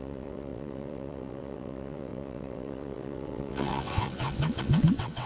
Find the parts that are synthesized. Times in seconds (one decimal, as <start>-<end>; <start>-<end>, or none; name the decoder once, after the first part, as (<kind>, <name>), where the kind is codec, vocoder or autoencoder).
0.0-5.3 (vocoder, WaveNeXt)